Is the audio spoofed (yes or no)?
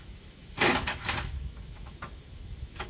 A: yes